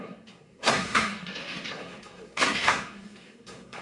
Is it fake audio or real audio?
fake